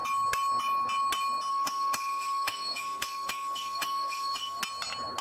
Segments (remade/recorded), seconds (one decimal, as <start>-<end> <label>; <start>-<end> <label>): 0.0-1.5 recorded; 1.5-4.6 remade; 4.6-5.2 recorded